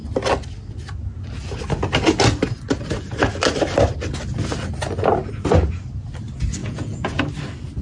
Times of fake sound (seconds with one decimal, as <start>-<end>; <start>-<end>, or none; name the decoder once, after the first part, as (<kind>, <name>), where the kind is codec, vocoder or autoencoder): 6.6-7.2 (vocoder, Vocos)